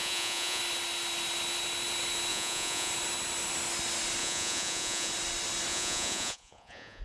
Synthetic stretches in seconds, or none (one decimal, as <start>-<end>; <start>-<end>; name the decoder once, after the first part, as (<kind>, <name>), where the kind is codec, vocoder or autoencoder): 0.0-0.6 (vocoder, Vocos); 2.3-2.9; 4.2-5.1; 5.7-7.0